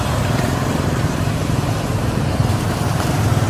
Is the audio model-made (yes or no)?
yes